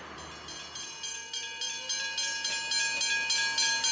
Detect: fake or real real